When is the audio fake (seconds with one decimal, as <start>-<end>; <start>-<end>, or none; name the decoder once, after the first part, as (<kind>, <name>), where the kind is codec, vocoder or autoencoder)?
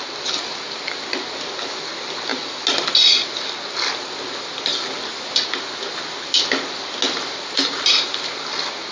none